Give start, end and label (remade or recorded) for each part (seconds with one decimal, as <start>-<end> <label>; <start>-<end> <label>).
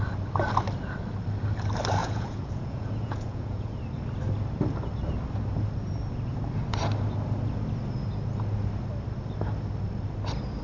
0.0-2.0 recorded; 2.0-3.8 remade; 3.8-10.6 recorded